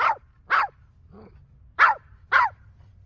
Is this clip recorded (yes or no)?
yes